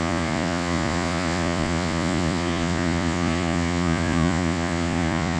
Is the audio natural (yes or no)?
no